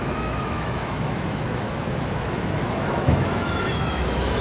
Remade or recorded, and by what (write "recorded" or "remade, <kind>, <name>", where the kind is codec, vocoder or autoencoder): remade, autoencoder, DAC-VAE